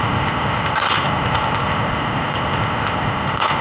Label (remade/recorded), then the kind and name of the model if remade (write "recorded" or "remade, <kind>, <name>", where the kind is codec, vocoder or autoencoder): remade, codec, ZipCodec